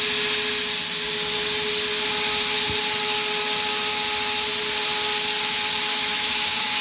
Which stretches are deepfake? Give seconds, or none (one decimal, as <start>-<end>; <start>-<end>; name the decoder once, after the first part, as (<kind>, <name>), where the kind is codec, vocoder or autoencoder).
5.9-6.8 (autoencoder, DAC-VAE)